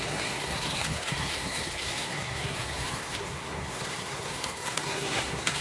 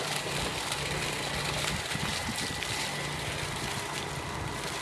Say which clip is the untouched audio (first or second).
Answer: second